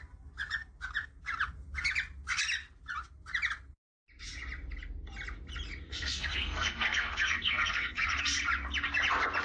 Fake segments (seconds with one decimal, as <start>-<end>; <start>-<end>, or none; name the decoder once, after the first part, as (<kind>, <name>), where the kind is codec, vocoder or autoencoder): 5.9-8.2 (codec, SNAC)